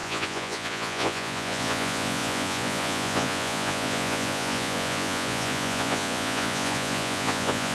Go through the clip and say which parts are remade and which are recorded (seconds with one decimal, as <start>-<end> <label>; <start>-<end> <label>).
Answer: 0.0-7.7 remade